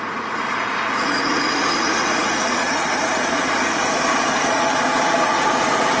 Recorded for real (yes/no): no